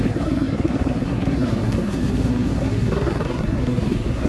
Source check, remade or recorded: remade